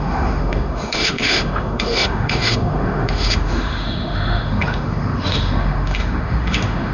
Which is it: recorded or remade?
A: remade